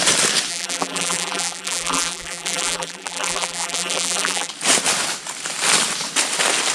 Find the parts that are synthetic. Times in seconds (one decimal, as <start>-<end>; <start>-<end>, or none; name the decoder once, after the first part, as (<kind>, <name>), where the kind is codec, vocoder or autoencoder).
0.5-4.5 (vocoder, BigVGAN v2)